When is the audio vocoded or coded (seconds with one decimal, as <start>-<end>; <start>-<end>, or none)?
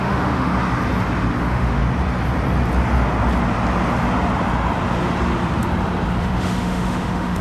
0.0-0.5; 1.4-1.8; 6.2-7.4